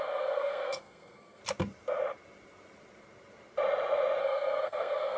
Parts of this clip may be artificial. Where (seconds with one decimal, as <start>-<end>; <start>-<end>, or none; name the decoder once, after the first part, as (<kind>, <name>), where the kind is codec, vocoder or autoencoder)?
0.0-1.4 (codec, SNAC); 4.2-5.2